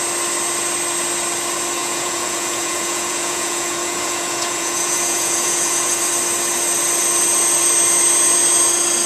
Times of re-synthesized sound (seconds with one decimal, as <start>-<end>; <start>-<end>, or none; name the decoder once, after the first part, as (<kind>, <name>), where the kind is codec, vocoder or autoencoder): 1.8-6.0 (vocoder, Vocos)